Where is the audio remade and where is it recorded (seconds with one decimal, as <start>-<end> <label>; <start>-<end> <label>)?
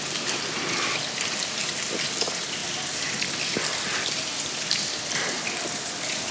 0.0-6.3 recorded